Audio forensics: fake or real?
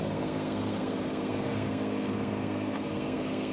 fake